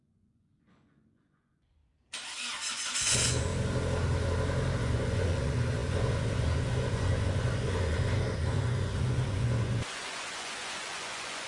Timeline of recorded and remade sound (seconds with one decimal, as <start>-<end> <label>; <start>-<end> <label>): 0.0-1.8 remade; 1.8-2.7 recorded; 2.7-3.5 remade; 3.5-4.8 recorded; 4.8-11.5 remade